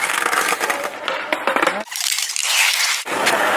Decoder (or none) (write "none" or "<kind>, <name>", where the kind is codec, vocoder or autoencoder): none